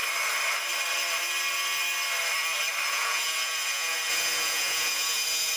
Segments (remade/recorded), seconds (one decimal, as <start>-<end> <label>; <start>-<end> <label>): 0.0-2.9 recorded; 2.9-5.6 remade